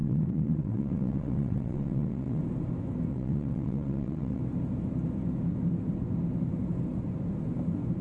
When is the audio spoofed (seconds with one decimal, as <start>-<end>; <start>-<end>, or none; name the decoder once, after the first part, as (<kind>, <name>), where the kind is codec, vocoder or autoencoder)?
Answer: 0.0-2.4 (vocoder, WaveNeXt); 3.1-4.4